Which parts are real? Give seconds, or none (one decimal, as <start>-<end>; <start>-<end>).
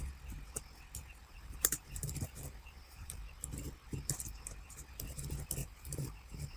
0.0-1.2; 3.2-5.6